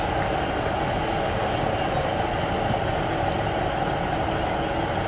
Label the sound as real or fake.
real